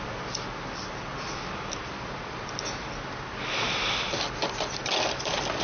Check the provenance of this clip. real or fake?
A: real